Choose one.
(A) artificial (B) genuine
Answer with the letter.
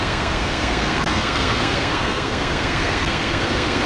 A